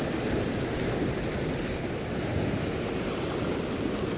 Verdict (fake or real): real